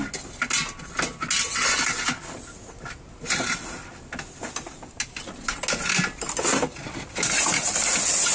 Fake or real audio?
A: real